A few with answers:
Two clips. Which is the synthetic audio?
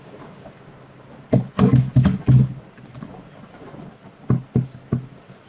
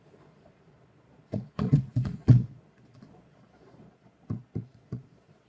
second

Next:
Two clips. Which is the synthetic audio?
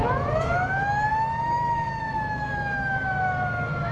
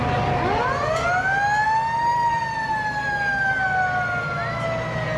first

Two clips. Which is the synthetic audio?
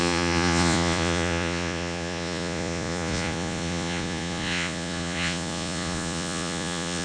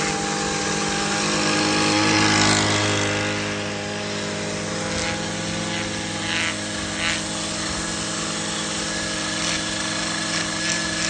first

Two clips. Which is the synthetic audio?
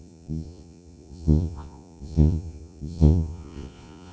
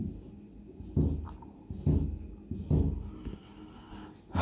first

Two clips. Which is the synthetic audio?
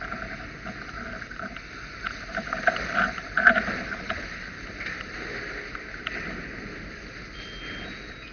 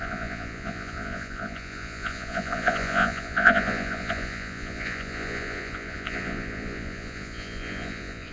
second